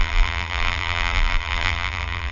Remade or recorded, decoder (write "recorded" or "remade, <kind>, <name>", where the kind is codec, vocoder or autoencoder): remade, vocoder, BigVGAN v2